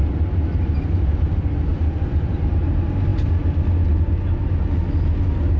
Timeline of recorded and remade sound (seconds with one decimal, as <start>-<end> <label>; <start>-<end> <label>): 0.0-5.6 recorded